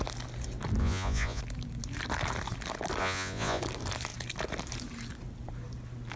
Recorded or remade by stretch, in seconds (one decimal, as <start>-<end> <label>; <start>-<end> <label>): 0.0-0.8 recorded; 0.8-1.4 remade; 1.4-3.0 recorded; 3.0-3.6 remade; 3.6-6.2 recorded